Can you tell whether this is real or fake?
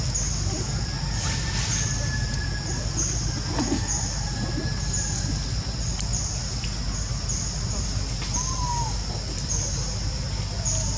real